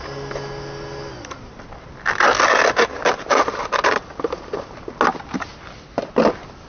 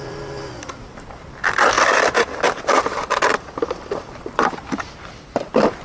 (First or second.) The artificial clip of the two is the second